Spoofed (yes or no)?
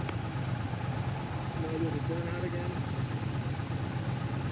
no